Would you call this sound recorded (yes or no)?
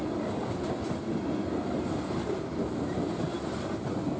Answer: yes